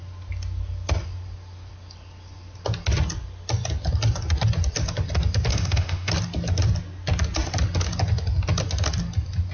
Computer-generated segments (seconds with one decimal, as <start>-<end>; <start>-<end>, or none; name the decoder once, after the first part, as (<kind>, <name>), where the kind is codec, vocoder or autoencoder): 5.5-6.1 (autoencoder, DAC-VAE)